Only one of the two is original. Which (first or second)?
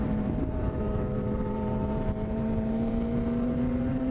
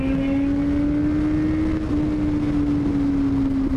second